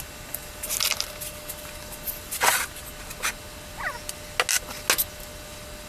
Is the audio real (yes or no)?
yes